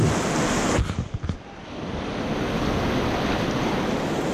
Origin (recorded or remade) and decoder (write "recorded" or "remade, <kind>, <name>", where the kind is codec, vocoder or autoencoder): recorded